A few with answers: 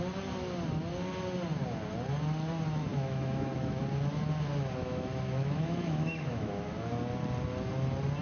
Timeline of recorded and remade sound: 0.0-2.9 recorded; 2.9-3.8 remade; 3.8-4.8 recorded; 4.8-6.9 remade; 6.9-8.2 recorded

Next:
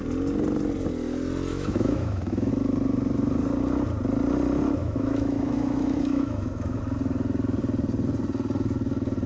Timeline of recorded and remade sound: 0.0-1.5 recorded; 1.5-2.5 remade; 2.5-4.8 recorded; 4.8-6.8 remade; 6.8-9.3 recorded

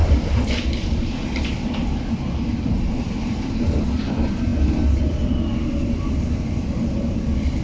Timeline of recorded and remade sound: 0.0-7.6 remade

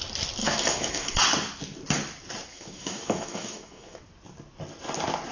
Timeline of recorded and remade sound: 0.0-0.4 recorded; 0.4-1.2 remade; 1.2-2.5 recorded; 2.5-4.0 remade; 4.0-5.3 recorded